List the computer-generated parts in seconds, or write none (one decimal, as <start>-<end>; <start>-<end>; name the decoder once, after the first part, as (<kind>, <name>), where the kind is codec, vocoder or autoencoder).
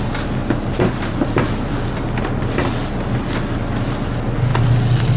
0.4-1.0 (vocoder, BigVGAN v2)